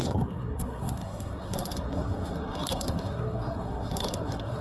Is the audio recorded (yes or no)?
no